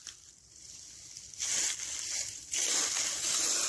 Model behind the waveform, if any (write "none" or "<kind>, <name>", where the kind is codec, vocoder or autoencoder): none